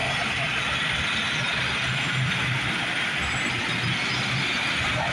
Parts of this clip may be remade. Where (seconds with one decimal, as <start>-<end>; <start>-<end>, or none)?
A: none